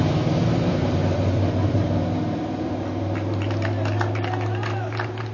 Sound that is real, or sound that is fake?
real